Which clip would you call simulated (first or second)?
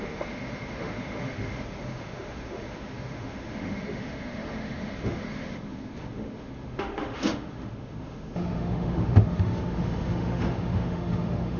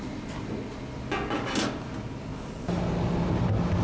first